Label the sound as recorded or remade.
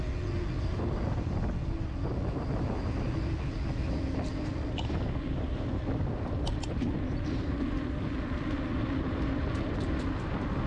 remade